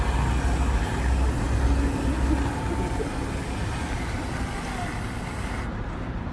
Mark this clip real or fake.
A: real